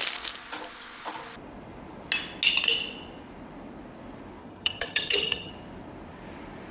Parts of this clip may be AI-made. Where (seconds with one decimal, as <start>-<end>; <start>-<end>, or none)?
4.4-5.5